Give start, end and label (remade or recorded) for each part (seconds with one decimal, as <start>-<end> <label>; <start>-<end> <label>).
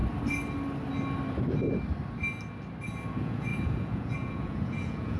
0.0-3.1 recorded; 3.1-5.2 remade